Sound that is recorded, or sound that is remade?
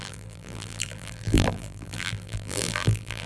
remade